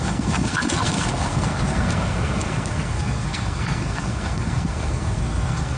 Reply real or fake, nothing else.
fake